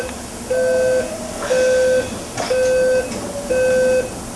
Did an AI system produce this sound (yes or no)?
no